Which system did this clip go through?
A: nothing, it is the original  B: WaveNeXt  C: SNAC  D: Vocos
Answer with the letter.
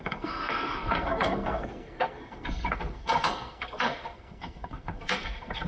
C